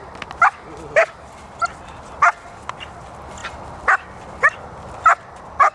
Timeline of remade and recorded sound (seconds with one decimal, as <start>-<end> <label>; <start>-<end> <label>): 0.0-5.7 recorded